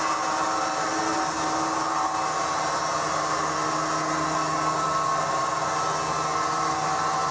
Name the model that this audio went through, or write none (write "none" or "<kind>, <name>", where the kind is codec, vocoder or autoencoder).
none